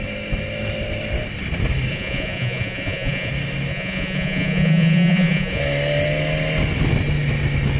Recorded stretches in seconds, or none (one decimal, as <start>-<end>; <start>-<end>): 0.0-1.9; 3.3-3.7; 5.6-7.8